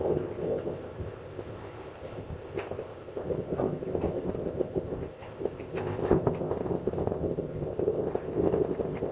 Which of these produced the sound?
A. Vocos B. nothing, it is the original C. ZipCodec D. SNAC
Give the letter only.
C